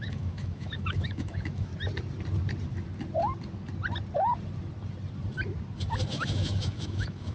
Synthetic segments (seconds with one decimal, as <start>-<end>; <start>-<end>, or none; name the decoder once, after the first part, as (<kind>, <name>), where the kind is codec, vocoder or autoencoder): 0.0-1.7 (autoencoder, DAC-VAE); 6.1-7.3

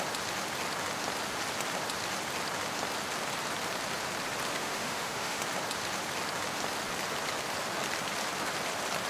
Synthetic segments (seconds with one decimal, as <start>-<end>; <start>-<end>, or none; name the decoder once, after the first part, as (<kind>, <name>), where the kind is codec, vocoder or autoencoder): 4.5-5.4 (autoencoder, DAC-VAE)